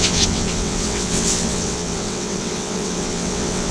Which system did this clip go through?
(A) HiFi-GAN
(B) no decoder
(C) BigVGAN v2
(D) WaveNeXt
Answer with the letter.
D